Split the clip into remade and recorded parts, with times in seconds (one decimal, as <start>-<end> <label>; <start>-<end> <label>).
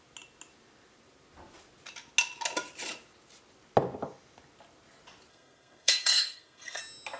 0.0-5.3 recorded; 5.3-6.8 remade; 6.8-7.2 recorded